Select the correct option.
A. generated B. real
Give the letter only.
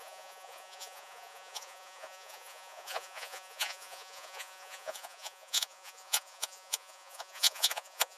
A